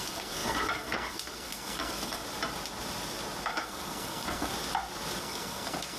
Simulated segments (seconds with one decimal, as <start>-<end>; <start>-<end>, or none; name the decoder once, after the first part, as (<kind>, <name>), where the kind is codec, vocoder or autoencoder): 0.0-2.2 (codec, SNAC); 3.4-4.5; 5.2-6.0